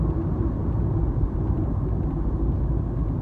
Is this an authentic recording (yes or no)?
yes